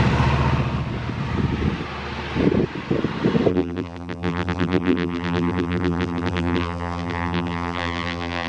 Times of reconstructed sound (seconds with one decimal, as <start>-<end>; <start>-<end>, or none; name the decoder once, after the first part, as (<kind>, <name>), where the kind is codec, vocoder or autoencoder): 3.5-8.5 (vocoder, BigVGAN v2)